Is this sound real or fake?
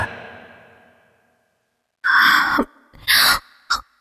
real